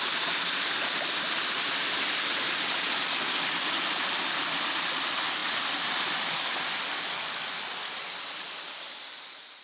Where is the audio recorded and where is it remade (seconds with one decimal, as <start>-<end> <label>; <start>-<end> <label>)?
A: 0.0-9.6 recorded